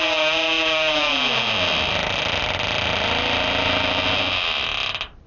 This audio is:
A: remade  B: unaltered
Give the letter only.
B